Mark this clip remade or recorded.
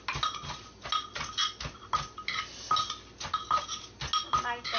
recorded